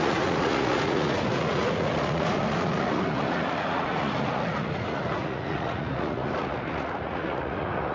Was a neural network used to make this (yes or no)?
yes